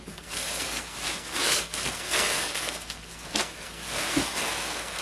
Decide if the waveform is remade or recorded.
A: remade